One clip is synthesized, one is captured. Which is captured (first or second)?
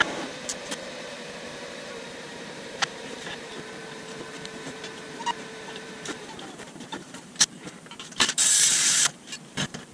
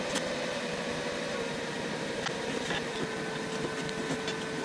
second